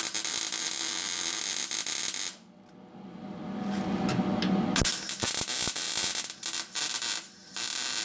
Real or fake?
real